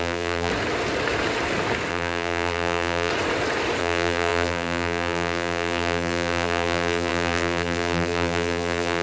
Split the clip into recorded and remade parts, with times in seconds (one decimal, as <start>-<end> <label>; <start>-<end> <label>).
0.0-0.5 remade; 0.5-1.9 recorded; 1.9-3.1 remade; 3.1-3.8 recorded; 3.8-9.0 remade